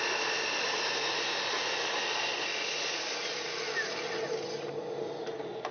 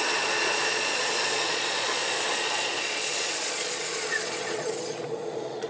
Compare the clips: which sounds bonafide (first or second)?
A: first